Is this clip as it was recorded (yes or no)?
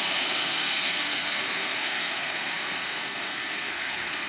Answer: no